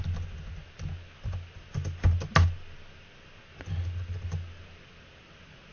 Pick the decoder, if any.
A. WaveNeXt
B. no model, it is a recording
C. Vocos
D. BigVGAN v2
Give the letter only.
B